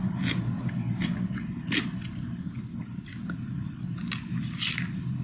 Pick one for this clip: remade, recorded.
recorded